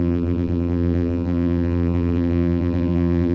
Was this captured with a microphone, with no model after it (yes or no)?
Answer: no